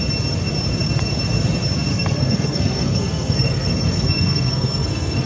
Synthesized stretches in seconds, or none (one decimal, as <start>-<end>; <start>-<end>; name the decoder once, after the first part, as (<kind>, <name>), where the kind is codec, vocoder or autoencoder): 1.9-5.3 (codec, SNAC)